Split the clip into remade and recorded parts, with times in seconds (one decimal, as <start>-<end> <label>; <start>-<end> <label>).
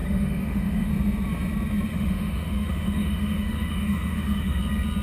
0.0-0.9 remade; 0.9-1.9 recorded; 1.9-4.6 remade; 4.6-5.0 recorded